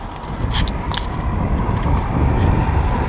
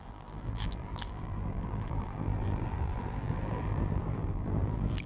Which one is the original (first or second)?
first